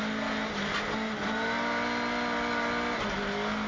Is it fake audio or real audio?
real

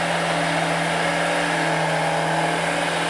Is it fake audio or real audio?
real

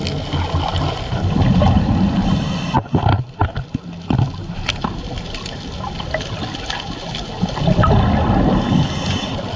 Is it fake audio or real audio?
real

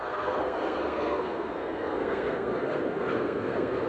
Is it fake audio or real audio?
fake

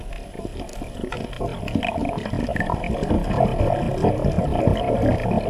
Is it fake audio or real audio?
real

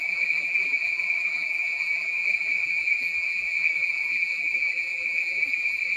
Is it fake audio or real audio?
fake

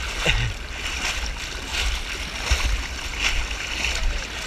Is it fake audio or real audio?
real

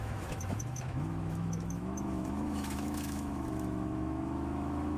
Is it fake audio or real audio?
fake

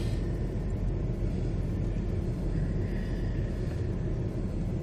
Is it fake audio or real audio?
real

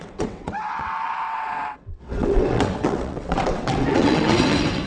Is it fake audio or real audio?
fake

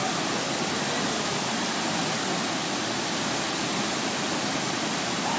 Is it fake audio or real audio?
real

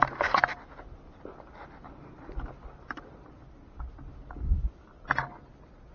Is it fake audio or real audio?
real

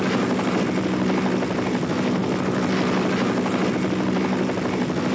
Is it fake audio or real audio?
real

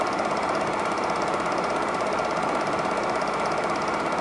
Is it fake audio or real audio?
fake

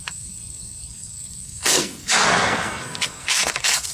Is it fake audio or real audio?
fake